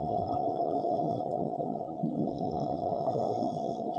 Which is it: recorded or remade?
remade